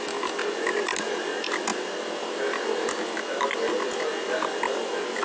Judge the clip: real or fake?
real